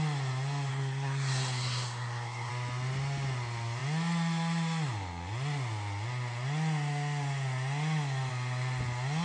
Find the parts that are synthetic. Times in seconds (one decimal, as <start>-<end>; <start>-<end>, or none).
0.7-2.5